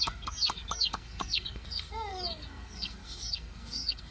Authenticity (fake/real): fake